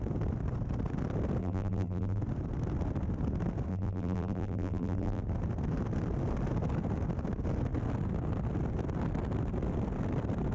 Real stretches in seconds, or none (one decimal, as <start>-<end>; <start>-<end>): 0.0-1.4; 2.2-3.7; 5.2-10.5